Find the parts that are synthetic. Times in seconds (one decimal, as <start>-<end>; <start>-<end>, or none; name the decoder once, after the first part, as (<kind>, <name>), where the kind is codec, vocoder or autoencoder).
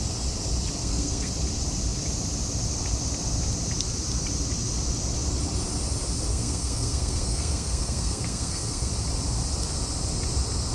0.8-1.3 (codec, SNAC); 6.3-8.9